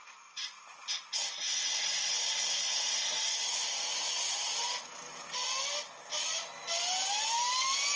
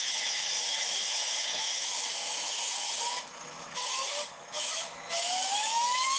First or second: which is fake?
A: second